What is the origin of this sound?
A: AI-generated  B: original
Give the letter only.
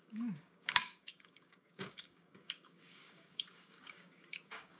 A